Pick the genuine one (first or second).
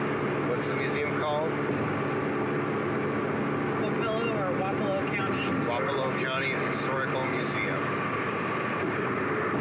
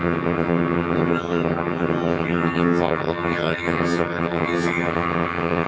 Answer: first